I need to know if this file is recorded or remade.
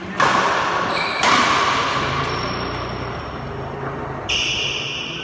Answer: recorded